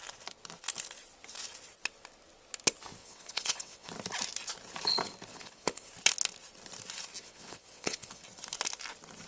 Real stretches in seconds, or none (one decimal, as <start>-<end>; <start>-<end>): 0.0-3.0; 3.9-5.3; 5.9-7.2; 8.2-9.3